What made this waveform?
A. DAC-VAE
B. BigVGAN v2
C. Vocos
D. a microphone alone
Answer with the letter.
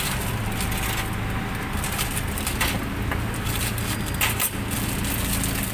D